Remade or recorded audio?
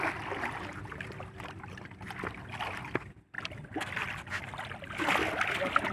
recorded